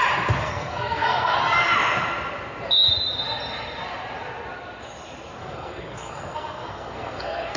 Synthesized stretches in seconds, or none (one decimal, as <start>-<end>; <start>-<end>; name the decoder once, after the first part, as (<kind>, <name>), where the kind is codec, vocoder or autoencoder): 0.4-1.4 (codec, SNAC); 5.4-7.6

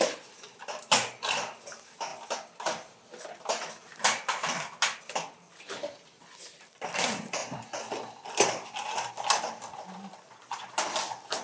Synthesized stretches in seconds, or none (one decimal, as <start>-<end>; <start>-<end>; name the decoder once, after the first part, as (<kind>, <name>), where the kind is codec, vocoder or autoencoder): none

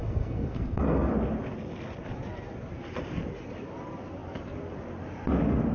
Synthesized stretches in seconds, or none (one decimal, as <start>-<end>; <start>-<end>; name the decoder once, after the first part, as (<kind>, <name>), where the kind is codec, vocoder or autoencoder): 0.0-1.1 (codec, SNAC)

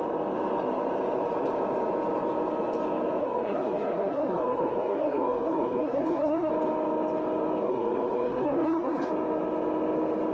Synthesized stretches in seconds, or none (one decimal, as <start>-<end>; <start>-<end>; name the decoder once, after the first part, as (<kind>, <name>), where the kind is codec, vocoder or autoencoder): 3.2-6.5 (codec, SNAC); 7.6-9.1

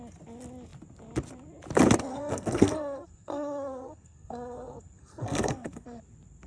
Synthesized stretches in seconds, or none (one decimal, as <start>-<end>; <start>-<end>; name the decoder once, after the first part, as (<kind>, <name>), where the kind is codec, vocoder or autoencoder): 2.1-6.0 (codec, SNAC)

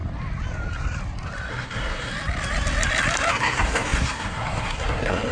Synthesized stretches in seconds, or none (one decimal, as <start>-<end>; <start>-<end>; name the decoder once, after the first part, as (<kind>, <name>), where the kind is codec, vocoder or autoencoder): 1.5-2.1 (codec, SNAC); 3.3-5.3

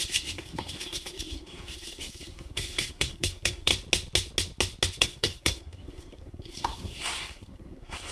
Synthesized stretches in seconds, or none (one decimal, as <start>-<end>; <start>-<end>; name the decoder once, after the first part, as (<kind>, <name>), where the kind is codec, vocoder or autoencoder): 0.0-3.7 (codec, SNAC); 5.0-8.1